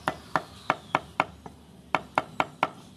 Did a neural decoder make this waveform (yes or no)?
no